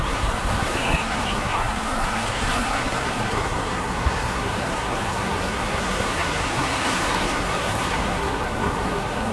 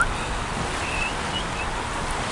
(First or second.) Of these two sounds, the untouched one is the second